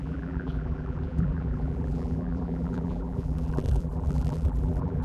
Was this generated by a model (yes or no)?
yes